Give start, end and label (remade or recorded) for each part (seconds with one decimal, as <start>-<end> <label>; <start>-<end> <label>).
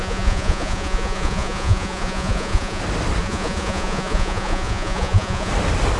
0.0-2.8 remade; 2.8-3.2 recorded; 3.2-5.5 remade; 5.5-6.0 recorded